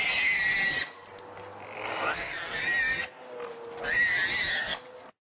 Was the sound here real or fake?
real